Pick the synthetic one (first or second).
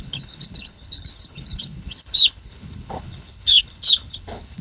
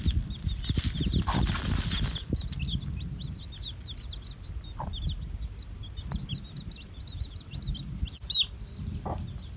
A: first